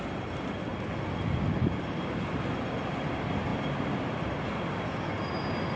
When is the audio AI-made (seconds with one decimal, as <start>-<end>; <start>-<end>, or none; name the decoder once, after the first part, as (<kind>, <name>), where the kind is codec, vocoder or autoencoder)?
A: none